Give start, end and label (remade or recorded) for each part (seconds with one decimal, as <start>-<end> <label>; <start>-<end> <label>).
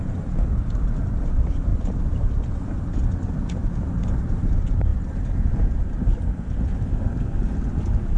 0.0-1.7 remade; 1.7-3.5 recorded; 3.5-6.0 remade; 6.0-7.7 recorded; 7.7-8.2 remade